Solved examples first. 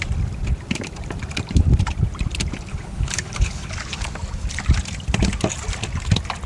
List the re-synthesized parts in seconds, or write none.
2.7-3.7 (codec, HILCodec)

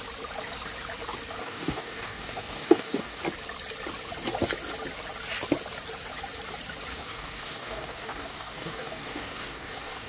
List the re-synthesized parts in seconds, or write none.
1.4-3.2 (codec, DAC); 6.9-10.1

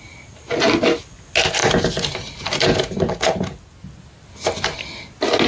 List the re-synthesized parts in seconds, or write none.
none

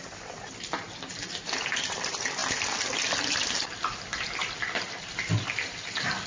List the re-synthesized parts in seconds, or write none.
0.0-2.4 (vocoder, BigVGAN v2); 2.9-6.3

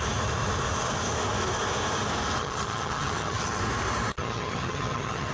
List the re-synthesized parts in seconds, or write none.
2.4-3.6 (vocoder, HiFi-GAN); 4.1-5.3

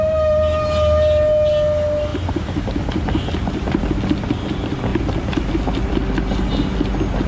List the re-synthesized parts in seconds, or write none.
2.1-3.8 (vocoder, BigVGAN v2)

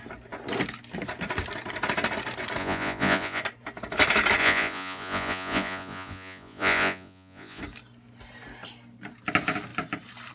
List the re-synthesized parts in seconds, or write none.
2.6-3.4 (vocoder, Vocos); 4.4-7.6